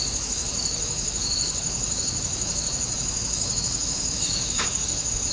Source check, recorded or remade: remade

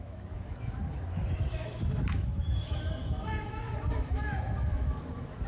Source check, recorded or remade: remade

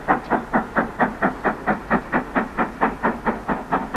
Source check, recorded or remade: recorded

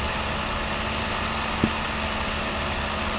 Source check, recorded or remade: recorded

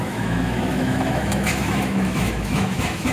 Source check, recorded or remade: remade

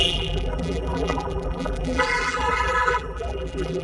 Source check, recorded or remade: remade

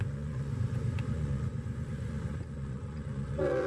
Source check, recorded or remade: remade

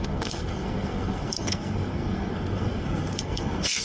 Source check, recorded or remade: remade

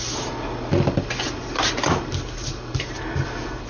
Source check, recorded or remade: recorded